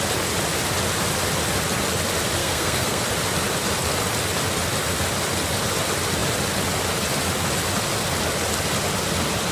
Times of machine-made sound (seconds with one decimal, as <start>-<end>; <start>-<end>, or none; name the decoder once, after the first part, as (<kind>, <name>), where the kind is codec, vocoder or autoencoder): 2.4-3.0 (codec, SNAC)